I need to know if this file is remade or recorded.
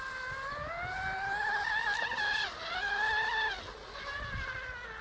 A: recorded